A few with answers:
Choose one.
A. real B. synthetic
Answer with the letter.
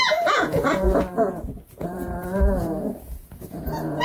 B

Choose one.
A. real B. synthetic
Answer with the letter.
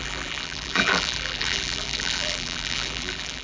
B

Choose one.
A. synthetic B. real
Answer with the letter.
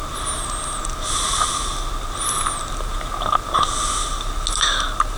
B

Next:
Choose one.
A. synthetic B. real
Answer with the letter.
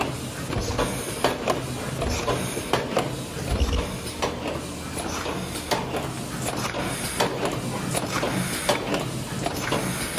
B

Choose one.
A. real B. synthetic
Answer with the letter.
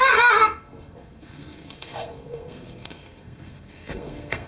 B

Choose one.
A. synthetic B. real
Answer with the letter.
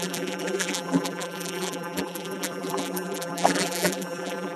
A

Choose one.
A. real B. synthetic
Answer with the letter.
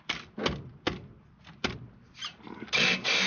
A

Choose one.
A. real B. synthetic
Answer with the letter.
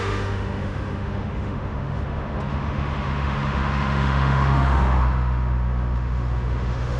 B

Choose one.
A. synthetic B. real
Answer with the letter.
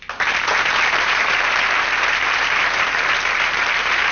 A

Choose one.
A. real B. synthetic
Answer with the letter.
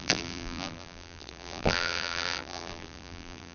B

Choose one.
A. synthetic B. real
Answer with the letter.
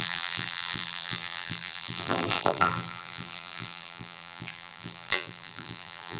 A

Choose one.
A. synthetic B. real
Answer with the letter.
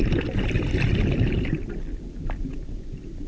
B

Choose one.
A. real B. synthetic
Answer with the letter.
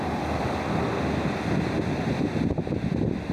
A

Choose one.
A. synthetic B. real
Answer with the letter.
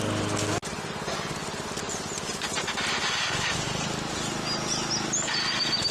B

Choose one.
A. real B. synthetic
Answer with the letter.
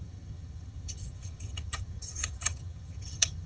B